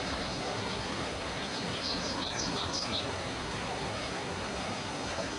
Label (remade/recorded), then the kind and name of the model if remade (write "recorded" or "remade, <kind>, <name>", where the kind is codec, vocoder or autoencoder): remade, codec, SNAC